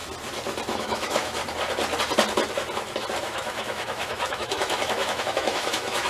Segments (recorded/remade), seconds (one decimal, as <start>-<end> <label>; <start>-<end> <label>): 0.0-0.7 recorded; 0.7-1.4 remade; 1.4-3.2 recorded; 3.2-6.1 remade